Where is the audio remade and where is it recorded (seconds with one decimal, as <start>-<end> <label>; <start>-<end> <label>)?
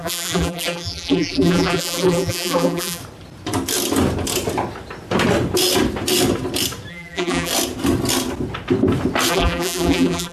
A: 0.0-3.0 remade; 3.0-6.9 recorded; 6.9-7.5 remade; 7.5-9.3 recorded; 9.3-10.3 remade